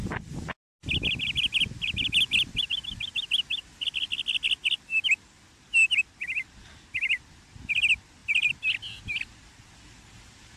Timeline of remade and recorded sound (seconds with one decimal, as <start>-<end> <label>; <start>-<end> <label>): 0.0-10.6 recorded